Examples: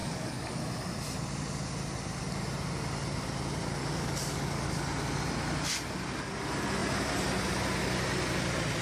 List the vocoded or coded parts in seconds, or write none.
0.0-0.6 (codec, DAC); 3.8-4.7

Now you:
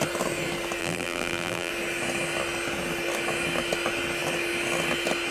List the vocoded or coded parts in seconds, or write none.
0.8-1.7 (vocoder, BigVGAN v2)

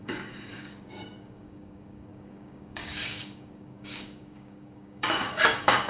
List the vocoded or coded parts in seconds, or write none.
0.0-5.9 (codec, DAC)

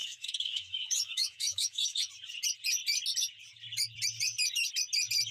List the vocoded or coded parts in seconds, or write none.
0.0-2.1 (autoencoder, DAC-VAE)

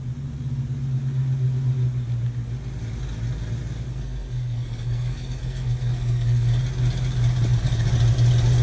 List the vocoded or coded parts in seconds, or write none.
3.9-6.6 (codec, SNAC)

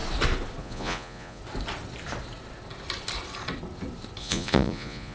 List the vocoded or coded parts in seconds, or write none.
0.6-1.4 (vocoder, Vocos); 4.2-5.1

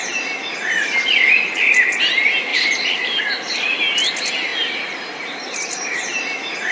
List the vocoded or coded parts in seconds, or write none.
2.5-3.2 (vocoder, BigVGAN v2)